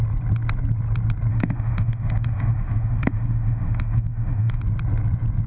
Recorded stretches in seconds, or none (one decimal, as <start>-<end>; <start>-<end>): 0.0-1.3; 4.6-5.5